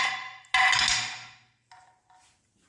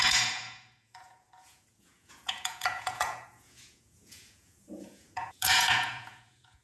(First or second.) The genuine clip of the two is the first